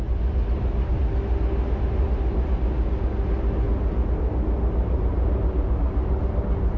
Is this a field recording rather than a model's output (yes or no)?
yes